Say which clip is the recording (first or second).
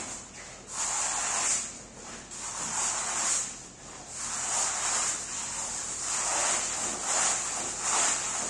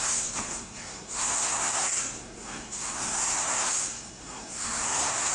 first